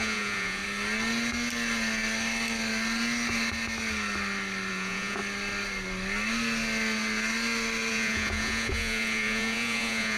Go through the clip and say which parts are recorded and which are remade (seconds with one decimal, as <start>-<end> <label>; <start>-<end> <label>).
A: 0.0-0.6 remade; 0.6-4.7 recorded; 4.7-5.2 remade; 5.2-7.9 recorded; 7.9-10.2 remade